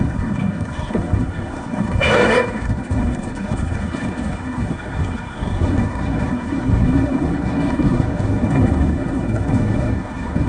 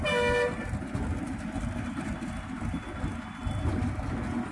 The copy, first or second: first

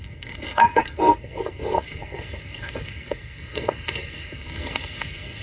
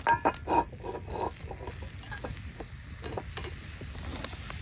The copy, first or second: first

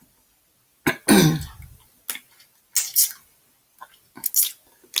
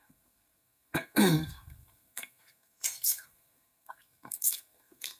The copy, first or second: second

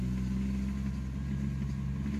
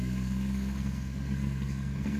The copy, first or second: second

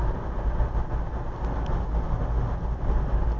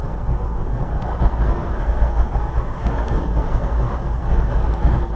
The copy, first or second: second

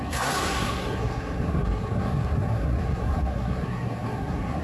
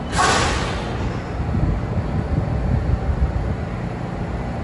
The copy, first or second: first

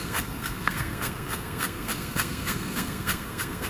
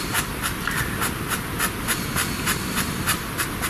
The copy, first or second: first